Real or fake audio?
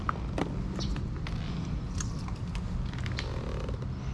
real